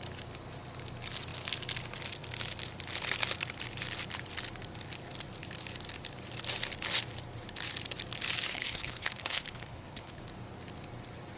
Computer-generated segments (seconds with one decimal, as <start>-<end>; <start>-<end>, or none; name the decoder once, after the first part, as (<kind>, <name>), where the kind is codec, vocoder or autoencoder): 8.5-10.2 (codec, HILCodec)